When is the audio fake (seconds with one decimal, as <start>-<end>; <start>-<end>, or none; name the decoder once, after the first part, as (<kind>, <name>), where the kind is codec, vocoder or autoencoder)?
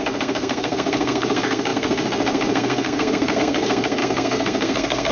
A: 0.0-5.1 (codec, SNAC)